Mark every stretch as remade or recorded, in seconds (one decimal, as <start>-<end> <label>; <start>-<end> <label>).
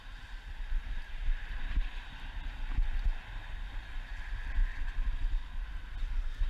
0.0-0.8 recorded; 0.8-1.9 remade; 1.9-6.5 recorded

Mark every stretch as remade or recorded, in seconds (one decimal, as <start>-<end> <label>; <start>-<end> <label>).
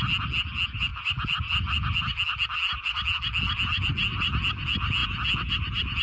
0.0-6.0 recorded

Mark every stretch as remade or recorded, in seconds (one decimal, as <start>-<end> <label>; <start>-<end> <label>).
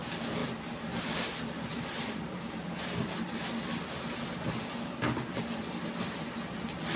0.0-1.7 recorded; 1.7-3.4 remade; 3.4-7.0 recorded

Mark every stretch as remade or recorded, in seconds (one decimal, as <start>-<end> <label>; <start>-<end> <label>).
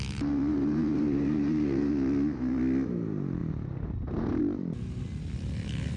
0.0-0.5 recorded; 0.5-1.9 remade; 1.9-6.0 recorded